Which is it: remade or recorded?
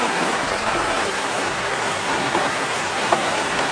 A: remade